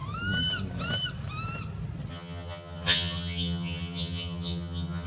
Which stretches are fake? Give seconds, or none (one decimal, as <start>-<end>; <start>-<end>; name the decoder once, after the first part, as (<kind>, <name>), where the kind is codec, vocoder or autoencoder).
2.1-5.1 (vocoder, HiFi-GAN)